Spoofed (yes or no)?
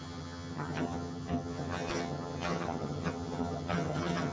yes